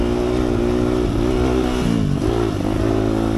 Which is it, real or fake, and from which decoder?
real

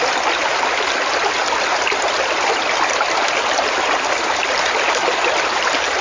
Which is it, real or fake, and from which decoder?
real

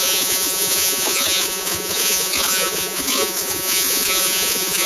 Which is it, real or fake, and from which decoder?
fake, vocoder, Vocos